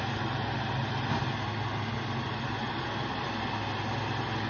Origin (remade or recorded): recorded